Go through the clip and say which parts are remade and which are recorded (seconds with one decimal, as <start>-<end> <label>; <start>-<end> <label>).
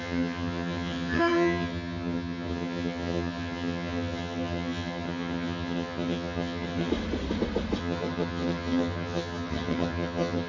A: 0.0-6.9 remade; 6.9-7.8 recorded; 7.8-10.5 remade